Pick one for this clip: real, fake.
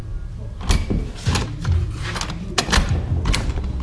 real